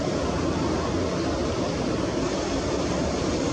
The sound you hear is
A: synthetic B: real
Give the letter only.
B